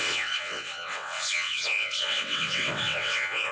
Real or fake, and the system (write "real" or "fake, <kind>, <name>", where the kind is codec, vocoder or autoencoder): fake, vocoder, WaveNeXt